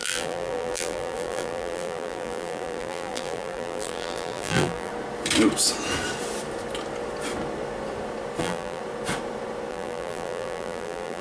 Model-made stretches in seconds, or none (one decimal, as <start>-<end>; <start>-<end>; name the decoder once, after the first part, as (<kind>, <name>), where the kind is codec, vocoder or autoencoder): 0.0-4.9 (vocoder, BigVGAN v2); 8.4-8.8; 9.7-11.2